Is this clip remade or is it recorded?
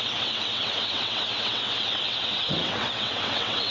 remade